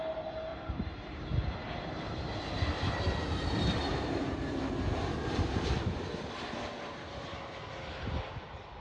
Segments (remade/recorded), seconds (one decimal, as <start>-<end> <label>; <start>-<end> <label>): 0.0-0.5 recorded; 0.5-4.7 remade; 4.7-8.8 recorded